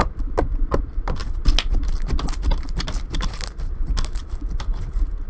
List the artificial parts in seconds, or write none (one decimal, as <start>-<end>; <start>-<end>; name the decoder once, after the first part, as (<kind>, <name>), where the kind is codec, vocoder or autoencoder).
none